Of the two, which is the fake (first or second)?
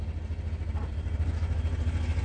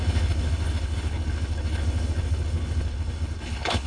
second